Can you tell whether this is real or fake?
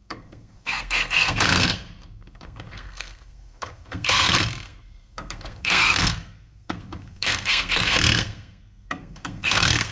fake